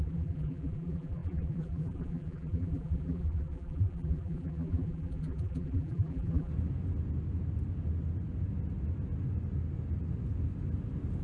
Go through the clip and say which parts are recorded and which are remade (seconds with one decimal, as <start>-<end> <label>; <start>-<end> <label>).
0.0-6.5 remade; 6.5-11.2 recorded